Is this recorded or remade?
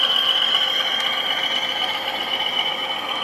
recorded